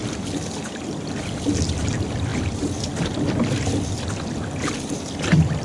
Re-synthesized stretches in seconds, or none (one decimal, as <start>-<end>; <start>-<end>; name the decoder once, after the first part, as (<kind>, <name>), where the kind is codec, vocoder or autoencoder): none